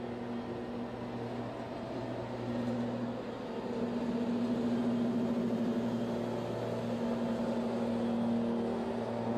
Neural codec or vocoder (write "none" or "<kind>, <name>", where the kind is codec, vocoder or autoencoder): none